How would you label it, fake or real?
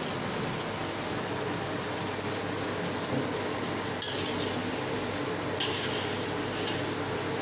real